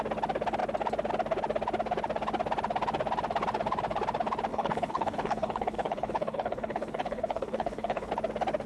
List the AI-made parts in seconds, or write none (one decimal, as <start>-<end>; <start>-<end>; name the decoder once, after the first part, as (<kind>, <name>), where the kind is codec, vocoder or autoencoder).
4.5-8.1 (codec, HILCodec)